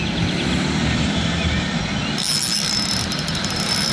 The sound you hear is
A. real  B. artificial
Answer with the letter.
A